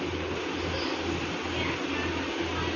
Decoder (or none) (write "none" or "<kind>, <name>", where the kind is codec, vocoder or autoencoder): none